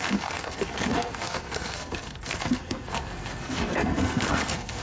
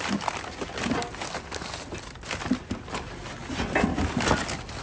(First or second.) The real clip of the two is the second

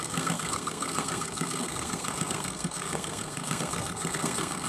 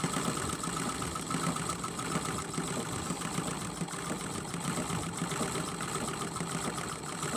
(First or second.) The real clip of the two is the second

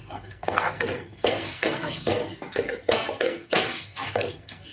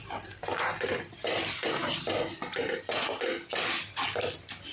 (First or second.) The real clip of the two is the second